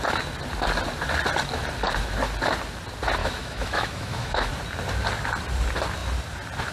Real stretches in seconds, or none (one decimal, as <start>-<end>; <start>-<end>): 0.0-3.2; 4.5-6.7

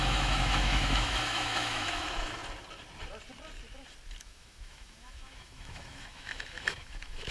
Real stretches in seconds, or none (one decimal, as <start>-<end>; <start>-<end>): 2.4-4.2

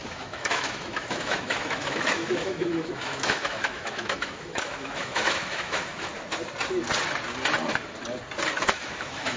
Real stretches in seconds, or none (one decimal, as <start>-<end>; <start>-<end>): 6.1-8.6

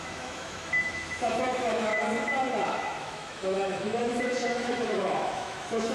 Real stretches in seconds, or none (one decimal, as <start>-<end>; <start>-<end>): 1.9-2.5

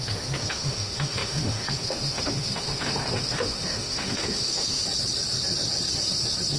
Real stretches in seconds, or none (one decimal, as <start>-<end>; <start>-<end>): 4.8-6.6

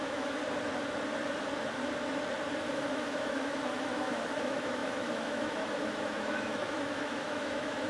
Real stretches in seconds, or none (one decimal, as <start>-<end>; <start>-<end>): 0.4-2.6